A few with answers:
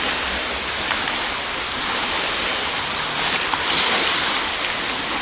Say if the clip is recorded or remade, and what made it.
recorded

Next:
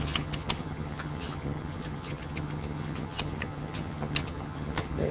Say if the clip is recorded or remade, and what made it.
remade, vocoder, HiFi-GAN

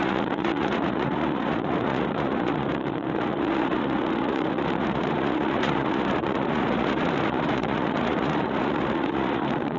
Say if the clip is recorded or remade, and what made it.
remade, vocoder, Vocos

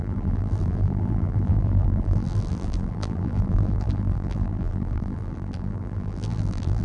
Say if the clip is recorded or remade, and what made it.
remade, vocoder, BigVGAN v2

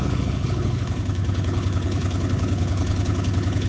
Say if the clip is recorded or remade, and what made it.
remade, codec, HILCodec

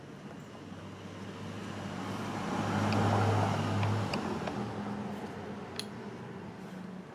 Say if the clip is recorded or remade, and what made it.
recorded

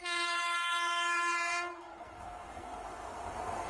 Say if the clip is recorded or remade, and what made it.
remade, codec, SNAC